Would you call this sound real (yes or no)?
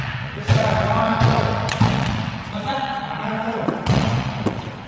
no